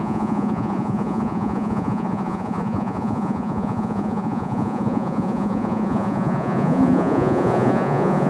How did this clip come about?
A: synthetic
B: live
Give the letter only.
A